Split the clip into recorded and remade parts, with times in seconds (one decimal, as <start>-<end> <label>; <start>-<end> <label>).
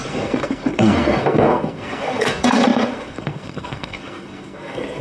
0.0-5.0 remade